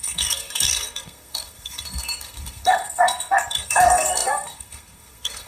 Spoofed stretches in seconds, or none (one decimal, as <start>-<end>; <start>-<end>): 0.0-5.5